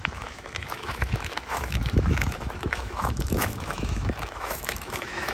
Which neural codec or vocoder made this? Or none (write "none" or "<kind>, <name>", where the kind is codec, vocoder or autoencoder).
autoencoder, DAC-VAE